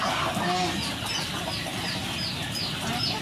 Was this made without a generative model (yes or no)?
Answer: yes